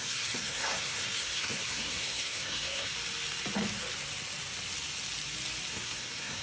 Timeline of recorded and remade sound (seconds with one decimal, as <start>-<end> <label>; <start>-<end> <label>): 0.0-2.9 remade; 2.9-5.7 recorded; 5.7-6.4 remade

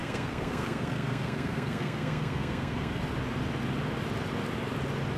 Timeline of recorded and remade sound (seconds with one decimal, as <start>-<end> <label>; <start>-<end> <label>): 0.0-3.0 remade; 3.0-5.2 recorded

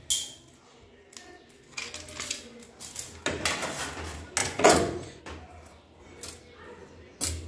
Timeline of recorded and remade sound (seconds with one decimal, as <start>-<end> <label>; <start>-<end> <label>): 0.0-4.4 recorded; 4.4-5.2 remade; 5.2-7.5 recorded

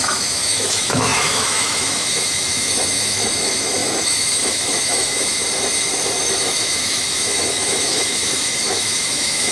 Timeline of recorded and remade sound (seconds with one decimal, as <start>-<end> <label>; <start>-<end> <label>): 0.0-5.4 remade; 5.4-6.2 recorded; 6.2-9.5 remade

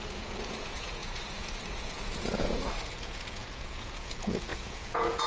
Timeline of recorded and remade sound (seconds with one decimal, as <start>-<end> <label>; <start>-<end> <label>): 0.0-5.3 remade

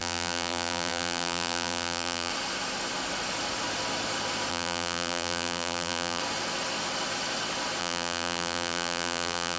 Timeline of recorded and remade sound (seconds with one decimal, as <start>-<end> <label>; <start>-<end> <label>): 0.0-2.3 remade; 2.3-4.5 recorded; 4.5-6.2 remade; 6.2-7.8 recorded; 7.8-9.6 remade